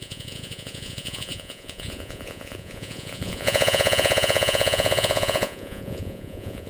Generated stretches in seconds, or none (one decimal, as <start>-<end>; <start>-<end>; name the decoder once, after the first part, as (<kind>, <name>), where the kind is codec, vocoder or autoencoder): 0.0-6.7 (vocoder, Vocos)